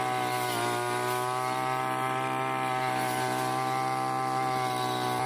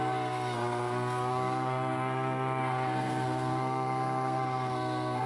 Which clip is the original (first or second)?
first